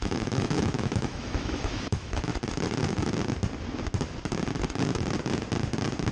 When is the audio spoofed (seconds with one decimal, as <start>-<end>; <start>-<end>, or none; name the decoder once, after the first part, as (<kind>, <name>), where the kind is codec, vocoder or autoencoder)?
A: 0.0-2.3 (autoencoder, DAC-VAE)